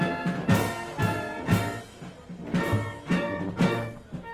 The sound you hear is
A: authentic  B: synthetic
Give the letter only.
A